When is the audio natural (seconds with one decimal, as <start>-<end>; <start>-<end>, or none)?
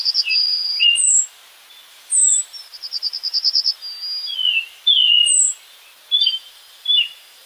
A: 0.8-1.9; 2.7-6.2